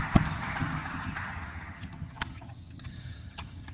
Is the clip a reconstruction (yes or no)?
yes